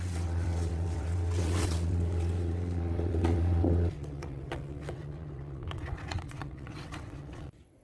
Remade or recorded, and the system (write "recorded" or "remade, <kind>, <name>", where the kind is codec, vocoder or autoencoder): remade, vocoder, WaveNeXt